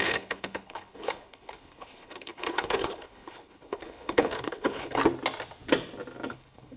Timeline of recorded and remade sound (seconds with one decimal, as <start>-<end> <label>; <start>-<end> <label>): 0.0-5.0 remade; 5.0-6.3 recorded; 6.3-6.8 remade